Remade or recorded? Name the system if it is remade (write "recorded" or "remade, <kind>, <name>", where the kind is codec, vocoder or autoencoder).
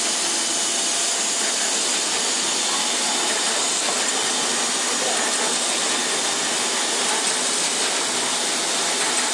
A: recorded